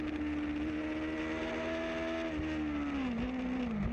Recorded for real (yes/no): yes